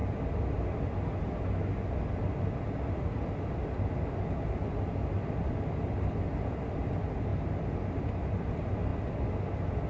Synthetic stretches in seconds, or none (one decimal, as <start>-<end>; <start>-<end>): 4.7-7.3; 7.9-8.9